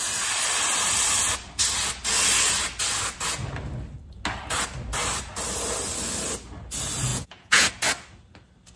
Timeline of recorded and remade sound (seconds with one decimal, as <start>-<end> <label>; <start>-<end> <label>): 0.0-7.1 recorded; 7.1-7.7 remade; 7.7-8.8 recorded